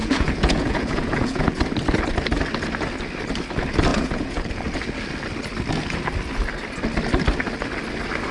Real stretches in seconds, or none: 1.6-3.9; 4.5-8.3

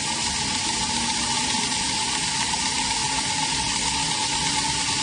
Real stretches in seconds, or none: 0.0-5.0

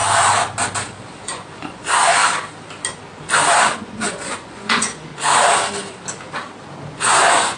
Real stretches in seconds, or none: 0.0-1.2; 2.2-3.5; 5.1-6.9